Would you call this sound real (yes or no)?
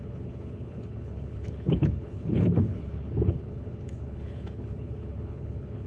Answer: no